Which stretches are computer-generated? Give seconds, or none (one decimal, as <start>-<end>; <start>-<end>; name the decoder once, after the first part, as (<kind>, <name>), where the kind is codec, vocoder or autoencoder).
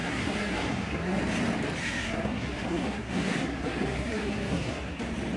0.0-1.2 (codec, SNAC); 1.8-5.0